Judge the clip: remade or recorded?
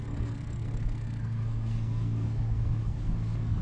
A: remade